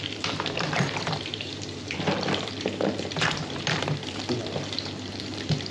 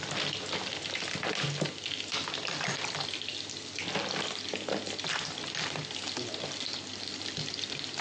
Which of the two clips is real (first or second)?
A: second